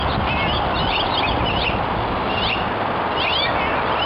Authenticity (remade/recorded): recorded